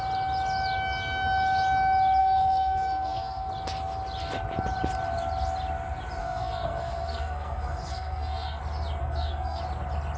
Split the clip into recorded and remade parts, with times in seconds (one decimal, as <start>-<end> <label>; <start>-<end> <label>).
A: 0.0-2.2 recorded; 2.2-3.5 remade; 3.5-6.2 recorded; 6.2-8.6 remade; 8.6-9.0 recorded; 9.0-9.6 remade; 9.6-10.2 recorded